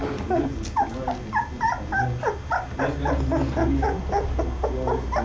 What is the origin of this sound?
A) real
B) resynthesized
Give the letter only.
A